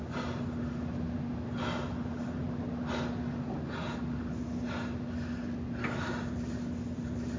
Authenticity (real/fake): real